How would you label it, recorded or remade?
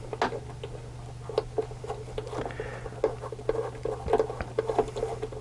recorded